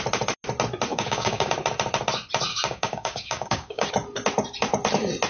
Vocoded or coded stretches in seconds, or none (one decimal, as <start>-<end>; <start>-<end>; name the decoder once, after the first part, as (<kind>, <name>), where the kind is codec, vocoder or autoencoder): 0.9-1.5 (codec, DAC); 2.5-3.9